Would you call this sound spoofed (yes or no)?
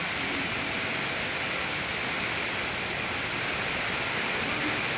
no